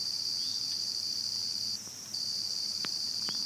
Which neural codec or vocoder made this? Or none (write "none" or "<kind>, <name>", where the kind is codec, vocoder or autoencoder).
vocoder, BigVGAN v2